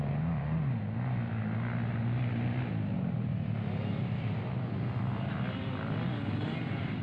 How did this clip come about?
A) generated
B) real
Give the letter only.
B